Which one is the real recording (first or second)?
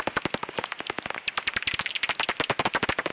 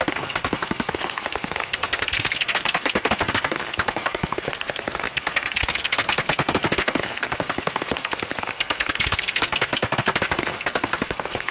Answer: first